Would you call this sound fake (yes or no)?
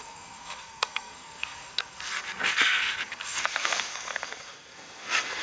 yes